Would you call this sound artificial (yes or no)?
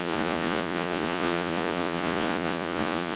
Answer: yes